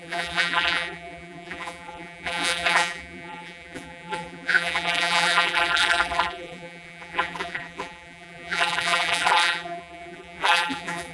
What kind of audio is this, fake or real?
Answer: fake